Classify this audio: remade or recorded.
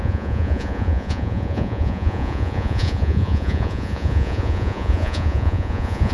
remade